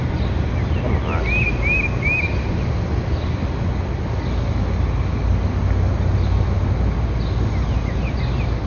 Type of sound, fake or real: real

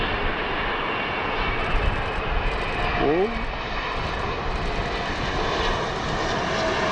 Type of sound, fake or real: real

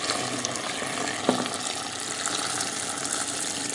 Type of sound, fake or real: real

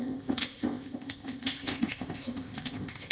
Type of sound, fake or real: fake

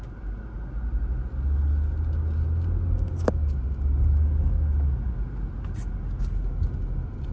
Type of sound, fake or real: real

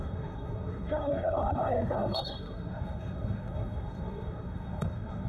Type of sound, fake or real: fake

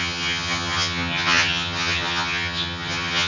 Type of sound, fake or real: fake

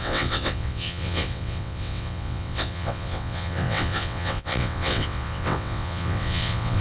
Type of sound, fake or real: fake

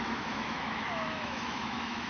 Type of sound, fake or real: fake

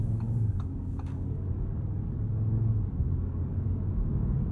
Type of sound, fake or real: fake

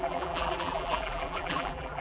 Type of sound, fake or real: fake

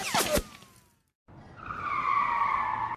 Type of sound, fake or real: real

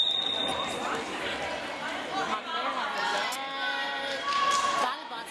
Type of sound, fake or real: real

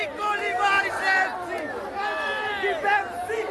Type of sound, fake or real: real